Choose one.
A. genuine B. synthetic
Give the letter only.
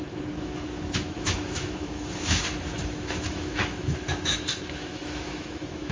B